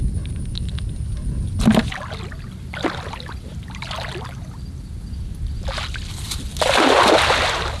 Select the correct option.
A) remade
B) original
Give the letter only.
B